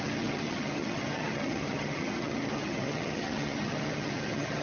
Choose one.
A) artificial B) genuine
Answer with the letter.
A